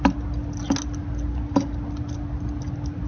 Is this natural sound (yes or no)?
yes